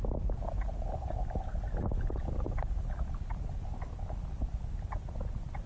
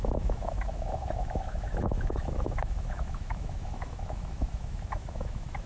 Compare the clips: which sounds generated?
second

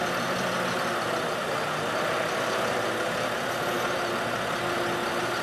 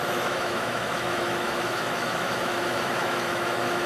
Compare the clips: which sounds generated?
second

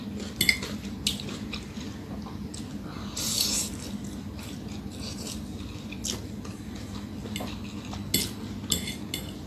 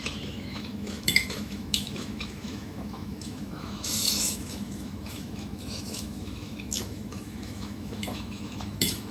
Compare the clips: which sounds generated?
second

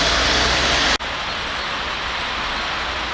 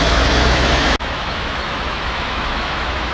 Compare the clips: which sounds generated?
second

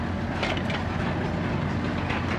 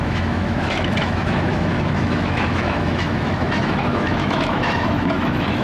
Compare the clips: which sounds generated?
second